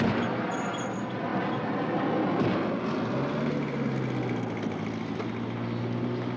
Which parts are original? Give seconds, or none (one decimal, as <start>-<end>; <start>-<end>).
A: 0.0-6.4